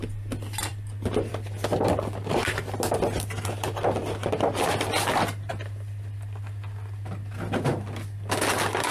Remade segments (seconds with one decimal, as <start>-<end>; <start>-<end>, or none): none